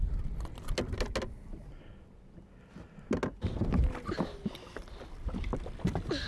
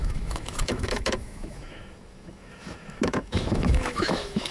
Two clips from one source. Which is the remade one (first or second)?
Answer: second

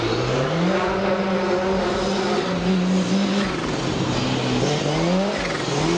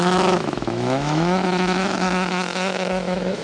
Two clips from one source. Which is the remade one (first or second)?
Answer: second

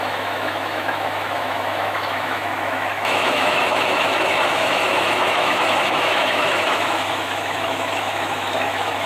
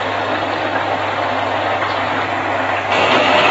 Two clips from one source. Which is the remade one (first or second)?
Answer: first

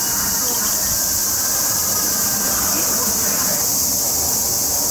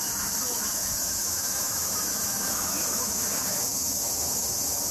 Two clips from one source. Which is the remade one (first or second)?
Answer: second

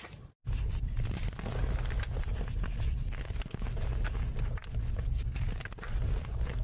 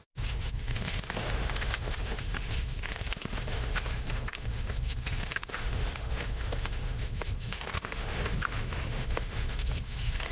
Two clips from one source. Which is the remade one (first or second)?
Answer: second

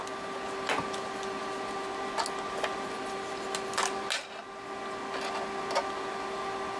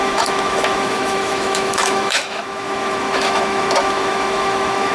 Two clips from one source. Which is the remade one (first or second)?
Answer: second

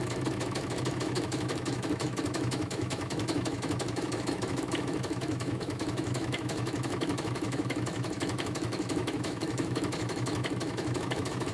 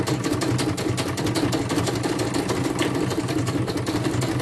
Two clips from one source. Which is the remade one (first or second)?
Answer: first